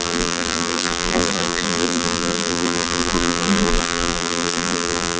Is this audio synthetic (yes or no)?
yes